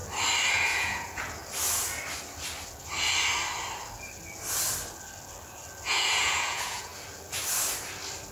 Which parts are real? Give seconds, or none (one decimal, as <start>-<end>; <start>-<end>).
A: 0.0-0.5; 1.4-5.9; 6.9-8.3